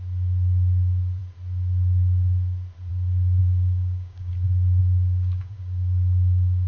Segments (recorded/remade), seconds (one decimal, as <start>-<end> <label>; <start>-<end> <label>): 0.0-3.4 recorded; 3.4-4.3 remade; 4.3-4.8 recorded; 4.8-6.7 remade